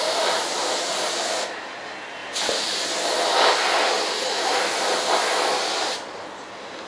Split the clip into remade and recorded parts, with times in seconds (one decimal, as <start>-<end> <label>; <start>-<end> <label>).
0.0-4.1 recorded; 4.1-4.6 remade; 4.6-6.9 recorded